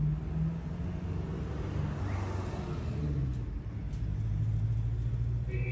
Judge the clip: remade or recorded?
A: recorded